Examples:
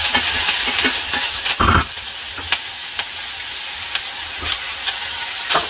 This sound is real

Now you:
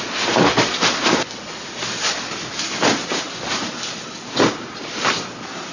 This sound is real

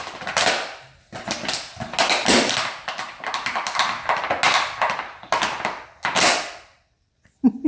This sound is real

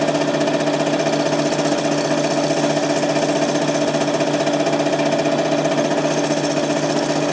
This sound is real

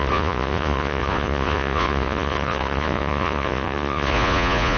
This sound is fake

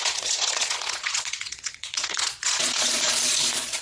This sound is fake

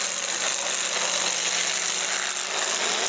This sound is real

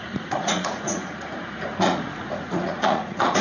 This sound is fake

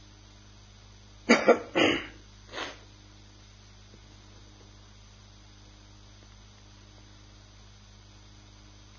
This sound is real